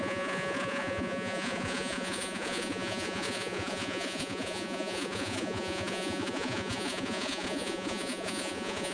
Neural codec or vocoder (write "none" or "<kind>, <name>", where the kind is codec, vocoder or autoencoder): vocoder, Vocos